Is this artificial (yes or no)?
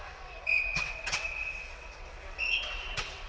yes